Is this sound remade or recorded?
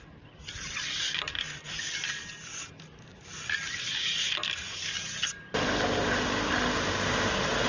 recorded